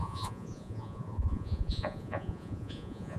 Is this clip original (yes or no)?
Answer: no